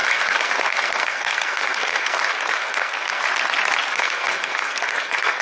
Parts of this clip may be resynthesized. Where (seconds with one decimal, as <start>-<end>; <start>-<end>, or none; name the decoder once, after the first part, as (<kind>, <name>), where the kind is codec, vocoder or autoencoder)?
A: 0.0-3.2 (codec, SNAC); 3.9-5.4

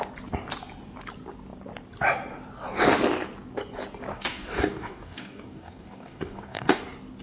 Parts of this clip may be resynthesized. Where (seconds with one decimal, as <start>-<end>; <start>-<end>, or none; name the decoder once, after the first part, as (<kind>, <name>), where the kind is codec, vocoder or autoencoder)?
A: 4.1-6.8 (codec, DAC)

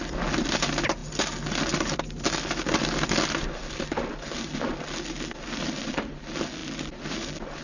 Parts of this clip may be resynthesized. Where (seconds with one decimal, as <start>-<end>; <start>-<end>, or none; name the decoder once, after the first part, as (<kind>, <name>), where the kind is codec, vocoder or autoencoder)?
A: none

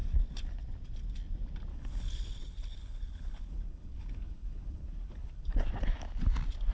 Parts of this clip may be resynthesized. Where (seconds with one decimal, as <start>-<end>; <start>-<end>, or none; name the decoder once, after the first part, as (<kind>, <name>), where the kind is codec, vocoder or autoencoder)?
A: 1.7-5.7 (codec, HILCodec)

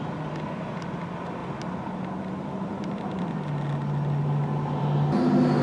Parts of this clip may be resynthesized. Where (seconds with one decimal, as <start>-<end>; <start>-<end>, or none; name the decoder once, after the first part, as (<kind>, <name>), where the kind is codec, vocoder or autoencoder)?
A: none

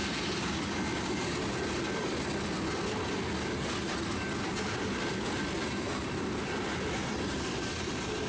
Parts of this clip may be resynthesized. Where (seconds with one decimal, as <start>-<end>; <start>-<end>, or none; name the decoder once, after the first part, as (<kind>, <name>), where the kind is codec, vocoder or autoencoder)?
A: none

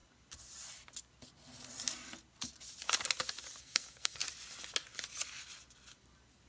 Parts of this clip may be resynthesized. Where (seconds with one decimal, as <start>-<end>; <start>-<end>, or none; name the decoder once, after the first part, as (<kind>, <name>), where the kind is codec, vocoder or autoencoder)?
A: 3.6-4.2 (codec, SNAC)